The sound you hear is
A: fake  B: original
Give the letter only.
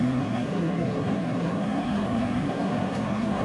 A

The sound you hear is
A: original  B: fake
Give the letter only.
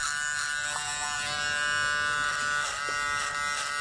A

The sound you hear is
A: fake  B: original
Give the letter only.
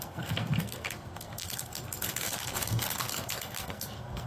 A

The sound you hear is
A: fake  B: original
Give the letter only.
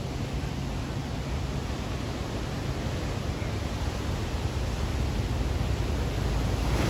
B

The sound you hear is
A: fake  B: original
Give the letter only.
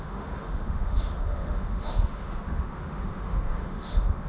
A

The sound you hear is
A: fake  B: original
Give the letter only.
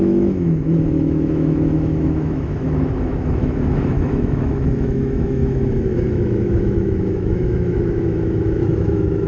A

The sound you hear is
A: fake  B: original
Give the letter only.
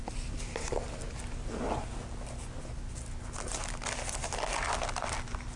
B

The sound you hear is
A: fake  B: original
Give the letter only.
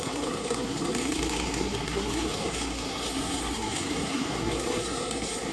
A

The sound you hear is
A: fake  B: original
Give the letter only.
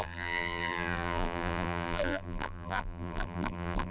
A